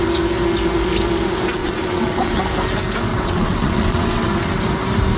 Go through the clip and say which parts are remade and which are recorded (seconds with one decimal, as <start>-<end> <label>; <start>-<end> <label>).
0.0-1.6 recorded; 1.6-2.4 remade; 2.4-3.1 recorded; 3.1-4.3 remade; 4.3-5.2 recorded